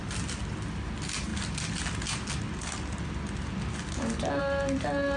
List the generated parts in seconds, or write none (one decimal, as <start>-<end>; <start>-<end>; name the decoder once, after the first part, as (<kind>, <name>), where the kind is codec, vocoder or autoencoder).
none